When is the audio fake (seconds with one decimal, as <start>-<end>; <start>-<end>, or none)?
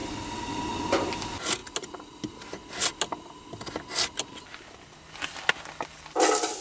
none